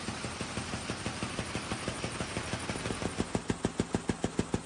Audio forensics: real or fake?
real